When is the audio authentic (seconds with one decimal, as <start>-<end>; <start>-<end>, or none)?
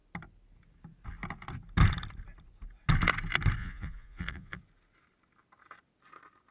0.0-3.6; 4.6-6.5